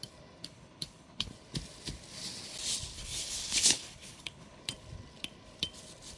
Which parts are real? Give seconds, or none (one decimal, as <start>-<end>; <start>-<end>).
0.0-0.4; 1.3-2.9; 4.6-6.2